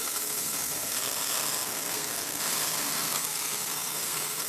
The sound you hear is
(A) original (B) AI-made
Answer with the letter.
B